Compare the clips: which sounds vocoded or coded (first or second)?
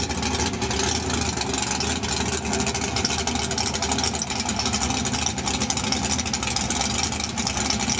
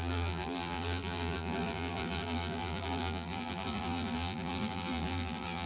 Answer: second